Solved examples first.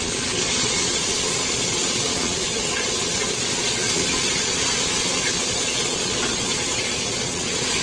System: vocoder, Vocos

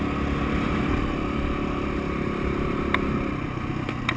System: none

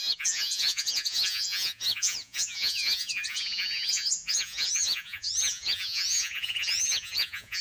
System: vocoder, Vocos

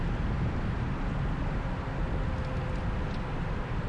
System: none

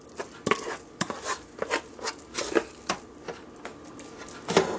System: none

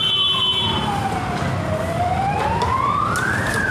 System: none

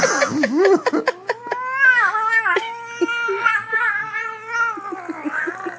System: none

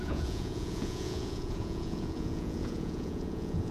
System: vocoder, Vocos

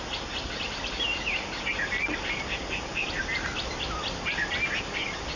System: none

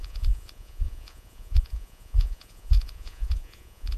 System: vocoder, Vocos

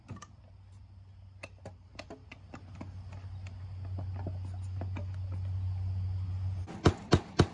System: none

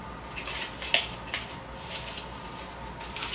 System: none